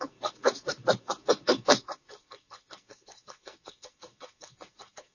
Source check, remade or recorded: remade